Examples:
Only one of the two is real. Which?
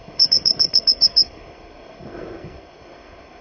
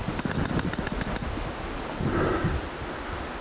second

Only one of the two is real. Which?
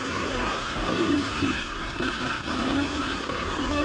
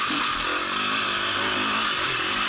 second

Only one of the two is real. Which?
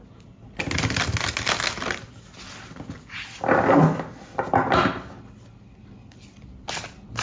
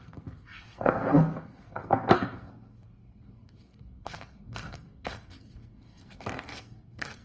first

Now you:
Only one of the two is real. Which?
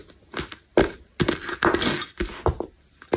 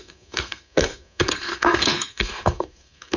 first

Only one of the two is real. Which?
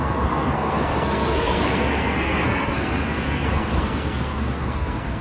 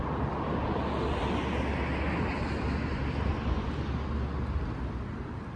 second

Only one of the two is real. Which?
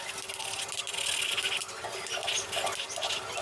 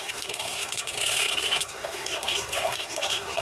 first